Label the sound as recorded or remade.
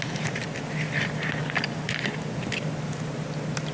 recorded